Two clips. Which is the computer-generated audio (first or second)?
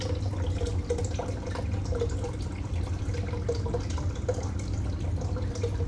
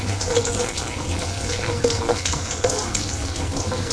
second